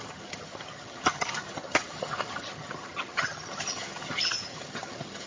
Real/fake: fake